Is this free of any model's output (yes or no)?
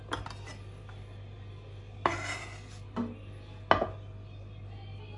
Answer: yes